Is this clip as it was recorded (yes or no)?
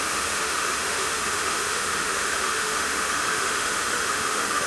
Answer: no